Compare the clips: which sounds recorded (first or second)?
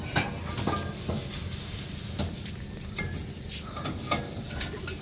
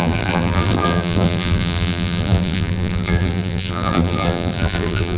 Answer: first